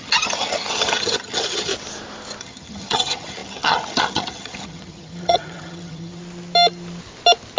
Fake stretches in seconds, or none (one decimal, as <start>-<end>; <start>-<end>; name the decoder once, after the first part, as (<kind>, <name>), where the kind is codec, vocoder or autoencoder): 0.0-1.7 (vocoder, HiFi-GAN); 2.4-6.2